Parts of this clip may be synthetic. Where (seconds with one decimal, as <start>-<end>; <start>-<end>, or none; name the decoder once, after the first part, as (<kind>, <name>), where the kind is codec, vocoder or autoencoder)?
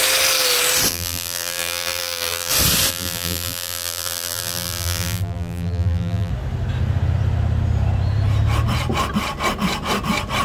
0.9-2.5 (vocoder, BigVGAN v2); 2.9-6.3